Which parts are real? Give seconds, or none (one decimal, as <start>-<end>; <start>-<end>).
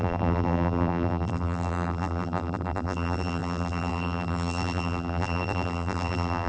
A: none